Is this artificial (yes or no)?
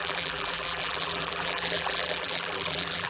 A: yes